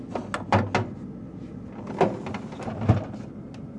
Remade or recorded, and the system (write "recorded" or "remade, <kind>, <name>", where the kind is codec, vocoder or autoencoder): recorded